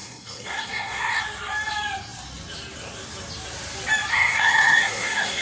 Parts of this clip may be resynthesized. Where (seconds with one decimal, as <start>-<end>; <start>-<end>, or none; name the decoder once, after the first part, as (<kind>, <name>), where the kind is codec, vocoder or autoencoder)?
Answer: 0.0-1.2 (codec, SNAC); 4.1-5.4